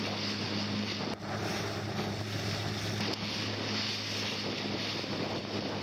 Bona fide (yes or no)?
yes